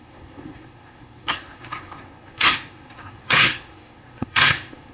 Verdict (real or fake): fake